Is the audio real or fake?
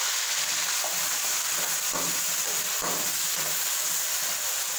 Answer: real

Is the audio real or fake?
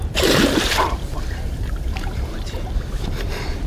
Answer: fake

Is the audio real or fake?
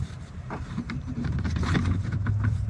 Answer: fake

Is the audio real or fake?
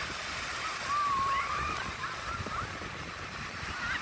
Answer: fake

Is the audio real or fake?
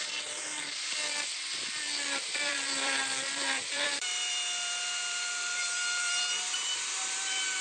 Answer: fake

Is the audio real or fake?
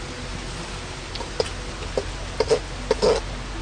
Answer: real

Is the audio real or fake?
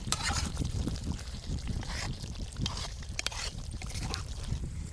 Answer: fake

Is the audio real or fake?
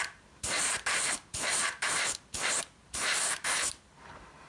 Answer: fake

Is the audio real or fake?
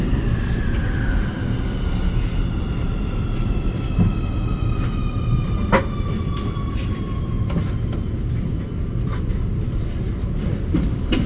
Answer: real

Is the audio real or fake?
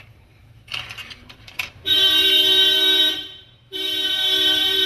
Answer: fake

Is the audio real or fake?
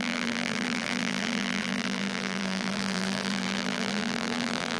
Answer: fake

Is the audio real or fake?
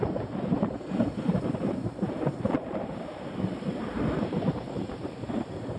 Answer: fake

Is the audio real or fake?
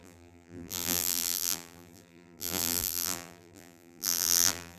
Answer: fake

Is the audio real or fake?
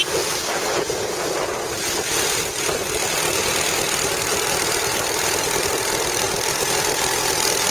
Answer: real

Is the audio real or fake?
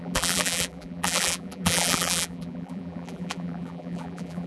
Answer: fake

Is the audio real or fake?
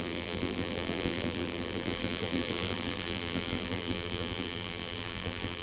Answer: fake